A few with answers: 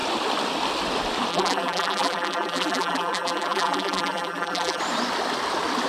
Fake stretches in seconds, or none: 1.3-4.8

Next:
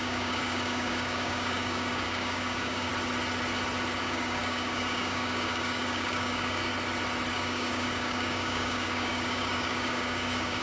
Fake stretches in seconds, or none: 0.0-2.9; 4.0-6.7; 7.3-10.6

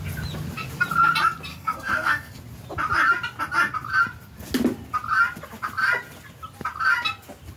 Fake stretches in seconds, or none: 1.5-2.4

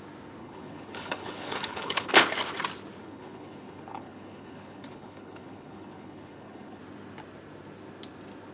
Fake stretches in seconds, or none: 0.4-2.1; 3.0-6.8

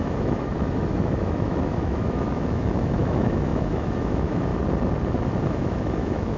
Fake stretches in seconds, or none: 0.0-4.5; 5.4-6.4

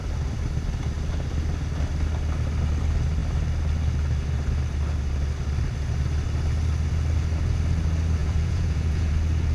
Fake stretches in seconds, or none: 8.2-9.1

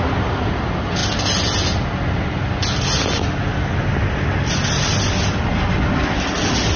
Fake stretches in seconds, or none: none